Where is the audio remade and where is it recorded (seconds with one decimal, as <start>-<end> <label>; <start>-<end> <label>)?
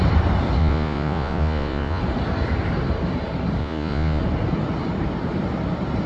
0.0-0.6 recorded; 0.6-2.0 remade; 2.0-3.6 recorded; 3.6-4.2 remade; 4.2-6.1 recorded